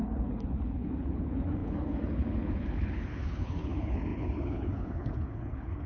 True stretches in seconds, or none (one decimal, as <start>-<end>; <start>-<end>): none

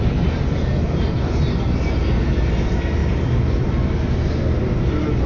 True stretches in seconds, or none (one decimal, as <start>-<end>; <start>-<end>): 0.0-5.3

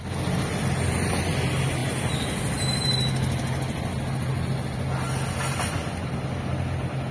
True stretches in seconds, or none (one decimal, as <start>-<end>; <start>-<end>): 0.0-7.1

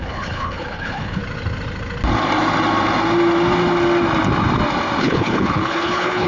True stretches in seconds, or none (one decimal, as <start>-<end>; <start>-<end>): 1.2-5.0

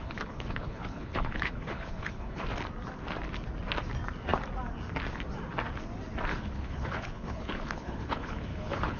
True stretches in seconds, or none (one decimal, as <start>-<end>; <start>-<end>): 2.4-6.3

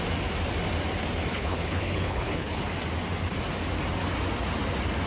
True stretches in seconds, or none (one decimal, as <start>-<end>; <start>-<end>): 0.0-1.3; 2.6-5.1

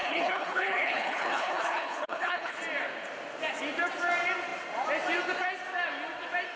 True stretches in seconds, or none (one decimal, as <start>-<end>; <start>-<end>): 2.6-6.6

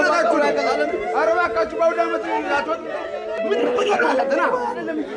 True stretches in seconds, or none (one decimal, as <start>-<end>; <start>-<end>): 0.0-3.6; 4.2-5.2